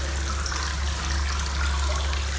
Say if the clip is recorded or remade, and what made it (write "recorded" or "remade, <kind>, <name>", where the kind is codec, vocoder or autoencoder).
recorded